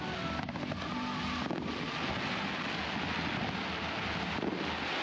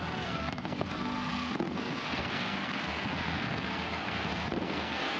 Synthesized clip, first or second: second